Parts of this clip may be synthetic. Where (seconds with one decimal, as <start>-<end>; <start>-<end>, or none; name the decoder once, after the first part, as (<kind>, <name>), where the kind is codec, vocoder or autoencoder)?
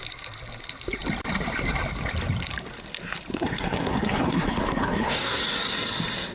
3.3-5.4 (codec, SNAC)